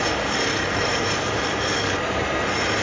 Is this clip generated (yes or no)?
yes